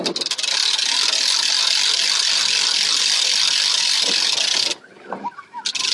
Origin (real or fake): real